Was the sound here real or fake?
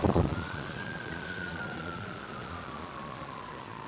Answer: fake